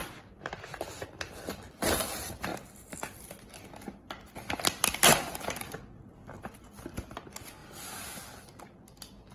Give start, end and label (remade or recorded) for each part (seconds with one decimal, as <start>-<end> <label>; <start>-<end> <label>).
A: 0.0-1.5 remade; 1.5-9.3 recorded